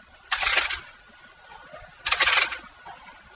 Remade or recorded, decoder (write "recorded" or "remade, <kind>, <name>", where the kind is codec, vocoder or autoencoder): remade, vocoder, Vocos